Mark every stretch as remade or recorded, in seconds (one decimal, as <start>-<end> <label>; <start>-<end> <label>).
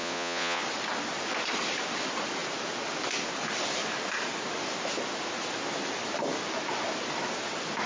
0.0-0.6 remade; 0.6-7.9 recorded